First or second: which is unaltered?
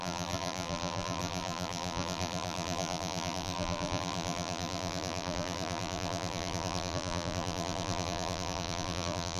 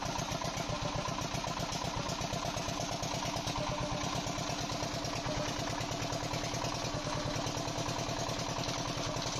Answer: second